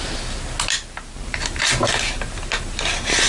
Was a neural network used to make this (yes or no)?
no